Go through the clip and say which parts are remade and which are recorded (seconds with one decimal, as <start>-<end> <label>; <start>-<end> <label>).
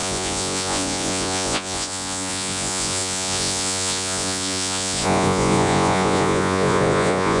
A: 0.0-7.4 remade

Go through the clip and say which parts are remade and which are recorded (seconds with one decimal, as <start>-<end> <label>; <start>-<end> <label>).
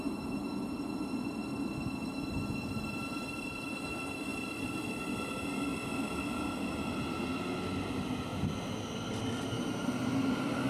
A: 0.0-4.3 recorded; 4.3-5.0 remade; 5.0-5.7 recorded; 5.7-6.9 remade; 6.9-8.3 recorded; 8.3-9.2 remade; 9.2-10.7 recorded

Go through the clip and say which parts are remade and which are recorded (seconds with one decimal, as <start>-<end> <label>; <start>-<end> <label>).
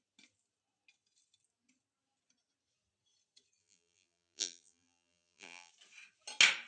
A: 0.0-3.6 recorded; 3.6-5.7 remade; 5.7-6.7 recorded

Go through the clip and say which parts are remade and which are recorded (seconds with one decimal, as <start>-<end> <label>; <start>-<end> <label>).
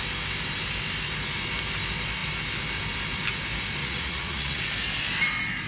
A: 0.0-3.8 recorded; 3.8-4.6 remade; 4.6-5.7 recorded